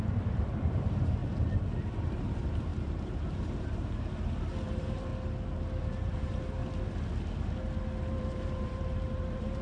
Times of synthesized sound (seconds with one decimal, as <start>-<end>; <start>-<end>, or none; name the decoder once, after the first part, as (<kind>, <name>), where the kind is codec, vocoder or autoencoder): 0.0-1.2 (vocoder, BigVGAN v2); 1.9-5.1; 5.8-6.6; 8.1-9.6